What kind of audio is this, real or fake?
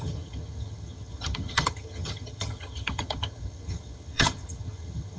fake